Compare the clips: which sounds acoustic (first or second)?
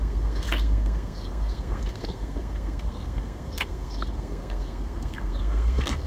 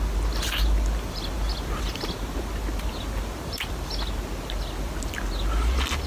second